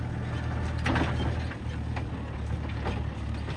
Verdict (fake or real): real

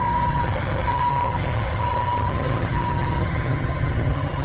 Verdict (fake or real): fake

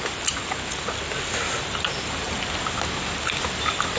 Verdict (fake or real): real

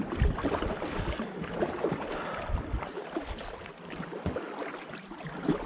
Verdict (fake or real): fake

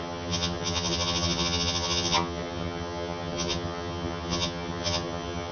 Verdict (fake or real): fake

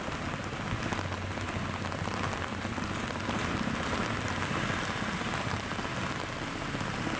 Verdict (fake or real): real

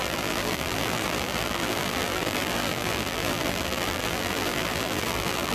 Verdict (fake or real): fake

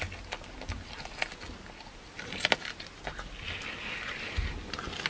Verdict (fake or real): real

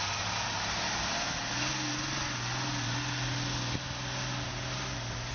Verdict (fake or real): real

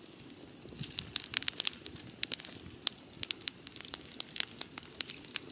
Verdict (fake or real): real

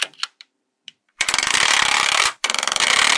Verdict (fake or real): fake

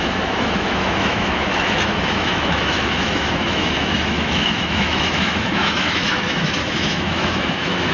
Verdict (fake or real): fake